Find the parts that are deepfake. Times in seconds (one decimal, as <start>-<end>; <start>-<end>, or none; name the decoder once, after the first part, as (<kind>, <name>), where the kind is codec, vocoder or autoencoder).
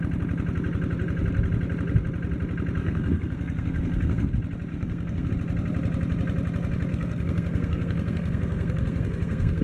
2.8-4.3 (codec, SNAC); 4.7-5.3; 6.9-9.6